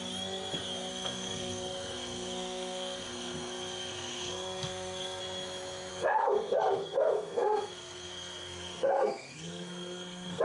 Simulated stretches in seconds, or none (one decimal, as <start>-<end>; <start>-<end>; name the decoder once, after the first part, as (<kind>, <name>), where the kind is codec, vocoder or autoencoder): 0.9-5.2 (codec, SNAC); 5.9-10.4